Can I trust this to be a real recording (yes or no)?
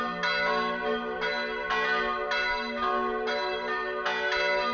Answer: yes